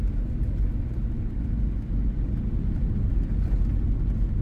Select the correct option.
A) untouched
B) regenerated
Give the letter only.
A